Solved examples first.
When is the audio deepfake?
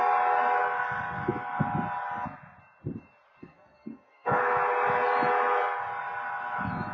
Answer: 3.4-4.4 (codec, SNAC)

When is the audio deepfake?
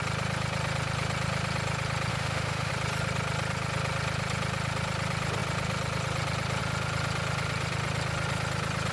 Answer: 2.1-2.7 (autoencoder, DAC-VAE)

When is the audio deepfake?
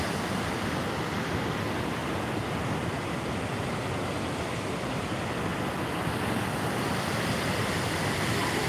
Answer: none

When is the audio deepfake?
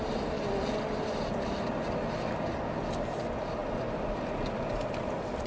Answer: none